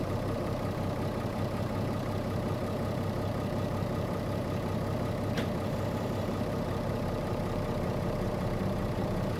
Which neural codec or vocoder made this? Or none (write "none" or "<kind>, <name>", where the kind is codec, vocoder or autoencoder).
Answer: vocoder, BigVGAN v2